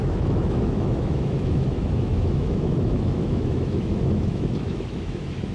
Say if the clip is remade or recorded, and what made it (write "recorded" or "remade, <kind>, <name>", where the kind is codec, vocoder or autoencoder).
remade, autoencoder, DAC-VAE